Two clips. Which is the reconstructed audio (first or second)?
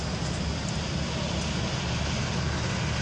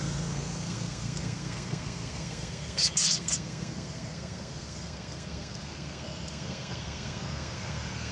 second